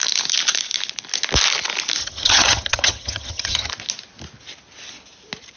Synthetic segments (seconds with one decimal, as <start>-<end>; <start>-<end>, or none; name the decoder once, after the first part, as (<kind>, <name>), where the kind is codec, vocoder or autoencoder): 2.0-3.7 (vocoder, HiFi-GAN)